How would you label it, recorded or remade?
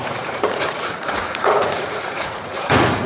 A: remade